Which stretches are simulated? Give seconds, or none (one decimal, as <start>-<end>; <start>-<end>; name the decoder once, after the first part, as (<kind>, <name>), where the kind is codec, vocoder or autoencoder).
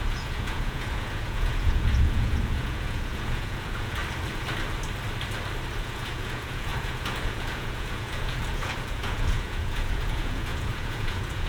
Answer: 0.0-4.0 (vocoder, Vocos); 5.8-11.5